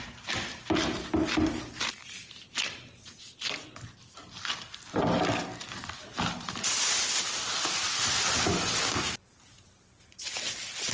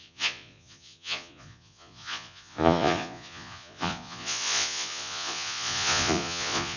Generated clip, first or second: second